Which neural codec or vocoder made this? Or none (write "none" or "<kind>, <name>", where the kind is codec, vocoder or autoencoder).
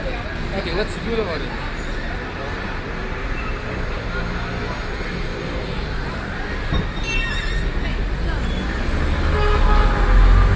none